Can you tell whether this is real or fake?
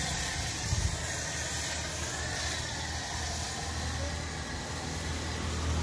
real